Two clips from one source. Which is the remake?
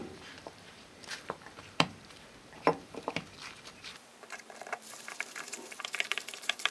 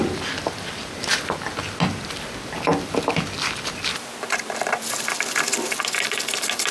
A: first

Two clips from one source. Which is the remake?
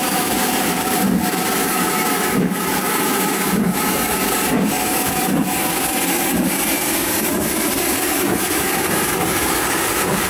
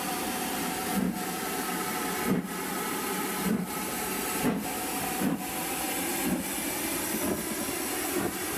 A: first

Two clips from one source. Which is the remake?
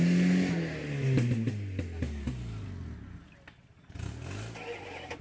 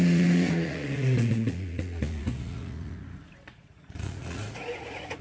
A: second